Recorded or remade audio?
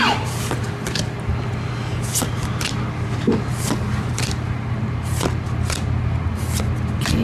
recorded